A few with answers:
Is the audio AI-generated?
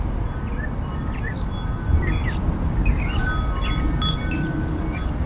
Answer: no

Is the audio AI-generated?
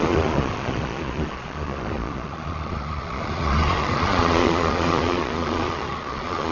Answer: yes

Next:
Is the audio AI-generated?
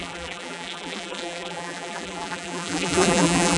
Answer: yes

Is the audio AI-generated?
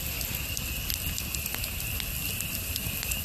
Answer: no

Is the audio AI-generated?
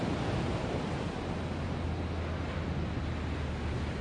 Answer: no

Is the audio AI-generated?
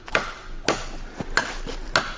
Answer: no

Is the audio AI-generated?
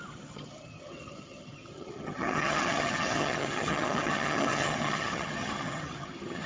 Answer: yes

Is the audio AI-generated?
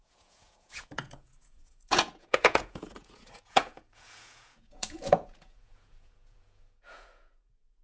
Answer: yes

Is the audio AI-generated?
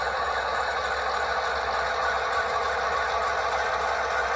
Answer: no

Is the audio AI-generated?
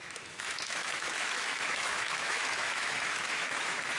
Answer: yes